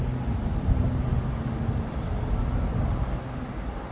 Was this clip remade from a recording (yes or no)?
no